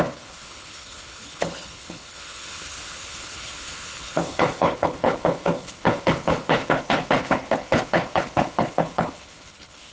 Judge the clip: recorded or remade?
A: remade